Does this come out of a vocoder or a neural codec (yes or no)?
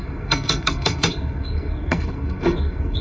yes